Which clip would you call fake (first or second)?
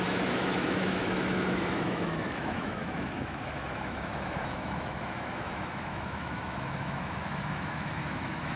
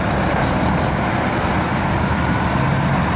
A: first